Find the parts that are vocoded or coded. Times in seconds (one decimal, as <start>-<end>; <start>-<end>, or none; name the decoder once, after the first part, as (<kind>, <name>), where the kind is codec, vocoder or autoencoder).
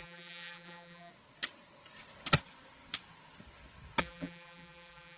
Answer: 0.0-1.1 (vocoder, BigVGAN v2); 4.0-5.2